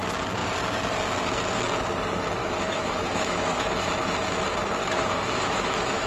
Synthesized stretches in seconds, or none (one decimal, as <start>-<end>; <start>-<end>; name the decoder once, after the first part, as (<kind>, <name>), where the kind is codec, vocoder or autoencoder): 2.4-3.9 (autoencoder, DAC-VAE); 4.8-6.1